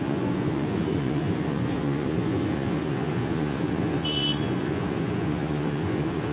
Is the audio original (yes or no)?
no